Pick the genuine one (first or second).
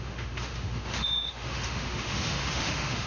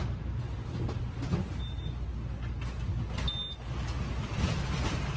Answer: second